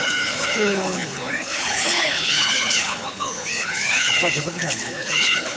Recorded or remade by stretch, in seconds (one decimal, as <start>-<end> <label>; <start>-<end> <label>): 0.0-5.6 remade

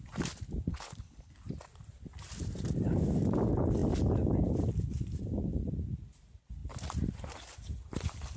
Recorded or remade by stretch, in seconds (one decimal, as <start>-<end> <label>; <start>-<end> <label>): 0.0-0.7 recorded; 0.7-1.3 remade; 1.3-8.4 recorded

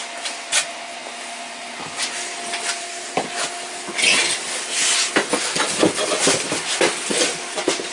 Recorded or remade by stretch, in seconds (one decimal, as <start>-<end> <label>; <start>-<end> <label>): 0.0-7.9 recorded

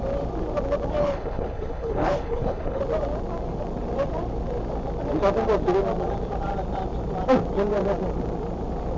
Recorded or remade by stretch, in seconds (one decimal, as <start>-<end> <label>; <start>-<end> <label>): 0.0-1.0 recorded; 1.0-2.8 remade; 2.8-9.0 recorded